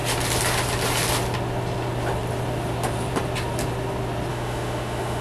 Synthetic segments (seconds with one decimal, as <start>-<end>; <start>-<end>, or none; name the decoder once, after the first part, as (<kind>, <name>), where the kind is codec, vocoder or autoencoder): 4.3-5.2 (autoencoder, DAC-VAE)

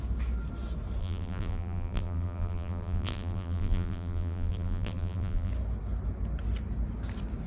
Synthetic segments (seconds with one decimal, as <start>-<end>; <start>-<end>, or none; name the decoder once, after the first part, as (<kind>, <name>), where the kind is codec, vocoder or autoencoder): 1.0-5.5 (vocoder, BigVGAN v2)

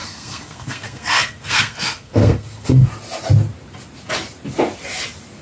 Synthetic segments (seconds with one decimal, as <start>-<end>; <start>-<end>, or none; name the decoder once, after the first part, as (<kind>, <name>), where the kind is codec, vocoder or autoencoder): 0.0-2.9 (codec, SNAC)